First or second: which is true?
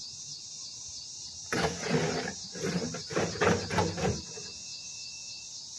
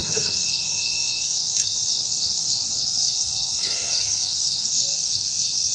first